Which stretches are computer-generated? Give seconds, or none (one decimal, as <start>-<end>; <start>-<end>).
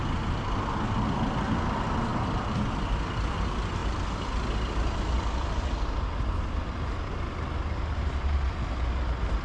none